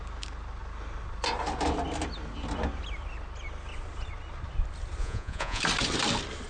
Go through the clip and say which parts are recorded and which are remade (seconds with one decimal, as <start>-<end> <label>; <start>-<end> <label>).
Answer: 0.0-5.0 recorded; 5.0-5.6 remade; 5.6-6.5 recorded